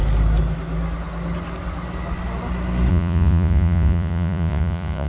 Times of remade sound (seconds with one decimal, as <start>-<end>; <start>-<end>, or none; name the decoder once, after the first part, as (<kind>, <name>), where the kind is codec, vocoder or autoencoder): 2.9-5.1 (vocoder, Vocos)